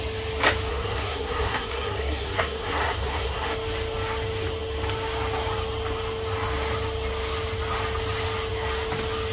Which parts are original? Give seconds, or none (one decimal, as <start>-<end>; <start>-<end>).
0.0-0.7; 3.5-9.3